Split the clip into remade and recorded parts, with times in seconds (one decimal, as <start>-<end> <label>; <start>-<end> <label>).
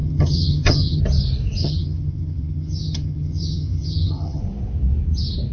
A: 0.0-1.0 remade; 1.0-1.6 recorded; 1.6-4.4 remade; 4.4-5.5 recorded